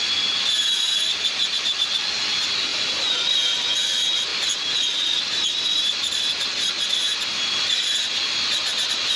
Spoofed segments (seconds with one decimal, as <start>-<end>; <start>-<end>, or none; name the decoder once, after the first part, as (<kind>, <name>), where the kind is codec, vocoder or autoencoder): 2.7-3.5 (vocoder, BigVGAN v2); 4.3-7.5